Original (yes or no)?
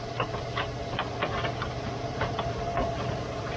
yes